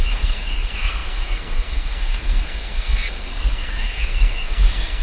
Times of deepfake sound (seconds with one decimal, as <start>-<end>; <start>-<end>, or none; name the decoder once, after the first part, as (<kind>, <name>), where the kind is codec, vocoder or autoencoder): 0.0-5.0 (codec, SNAC)